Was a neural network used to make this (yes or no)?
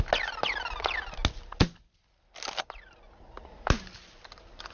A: no